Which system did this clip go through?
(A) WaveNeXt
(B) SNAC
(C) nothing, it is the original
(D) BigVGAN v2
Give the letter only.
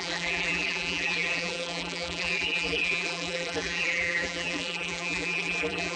D